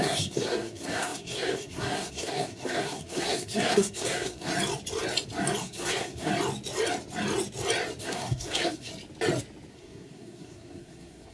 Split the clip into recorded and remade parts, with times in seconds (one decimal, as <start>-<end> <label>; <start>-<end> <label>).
0.0-4.5 remade; 4.5-5.6 recorded; 5.6-6.3 remade; 6.3-8.0 recorded; 8.0-8.9 remade; 8.9-9.7 recorded; 9.7-11.3 remade